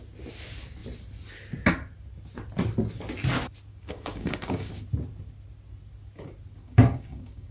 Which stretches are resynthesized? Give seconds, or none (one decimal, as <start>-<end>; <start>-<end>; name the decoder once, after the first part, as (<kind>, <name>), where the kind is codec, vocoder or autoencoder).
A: 3.7-4.7 (codec, DAC); 6.6-7.5